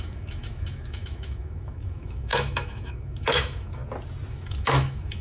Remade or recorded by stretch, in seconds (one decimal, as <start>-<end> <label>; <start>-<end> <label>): 0.0-3.8 remade; 3.8-4.3 recorded; 4.3-5.2 remade